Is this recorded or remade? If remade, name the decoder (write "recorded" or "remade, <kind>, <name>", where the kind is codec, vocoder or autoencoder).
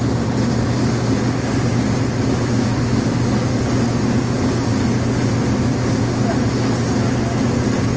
recorded